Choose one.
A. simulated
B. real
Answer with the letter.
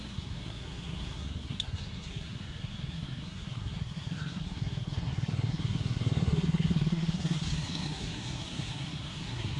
A